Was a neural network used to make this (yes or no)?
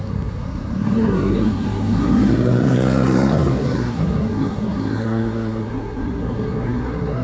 yes